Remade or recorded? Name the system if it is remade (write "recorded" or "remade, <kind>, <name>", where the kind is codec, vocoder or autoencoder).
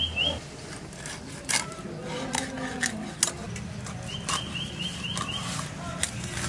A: recorded